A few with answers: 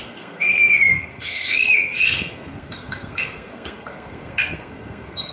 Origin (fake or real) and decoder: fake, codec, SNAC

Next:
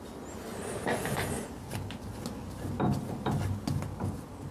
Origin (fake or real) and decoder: real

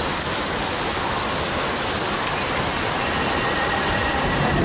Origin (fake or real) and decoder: real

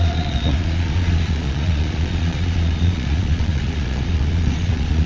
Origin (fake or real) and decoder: fake, vocoder, Vocos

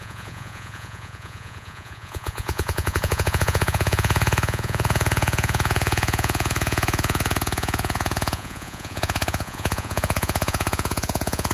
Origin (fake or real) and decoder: fake, vocoder, Vocos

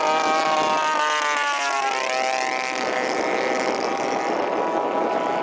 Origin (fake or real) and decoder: real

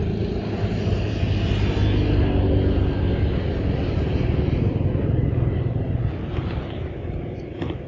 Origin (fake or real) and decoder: real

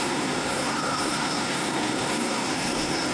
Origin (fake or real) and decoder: fake, codec, SNAC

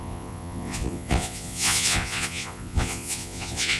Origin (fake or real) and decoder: fake, vocoder, Vocos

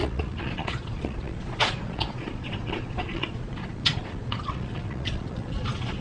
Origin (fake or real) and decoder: fake, vocoder, Vocos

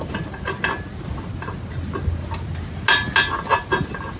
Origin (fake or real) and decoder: real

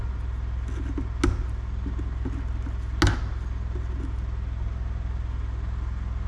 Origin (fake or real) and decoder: real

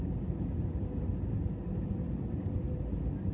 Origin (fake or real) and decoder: real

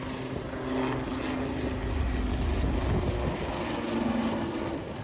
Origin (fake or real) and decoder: real